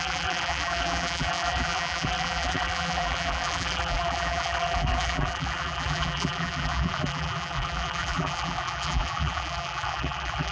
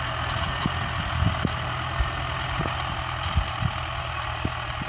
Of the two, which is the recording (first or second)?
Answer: second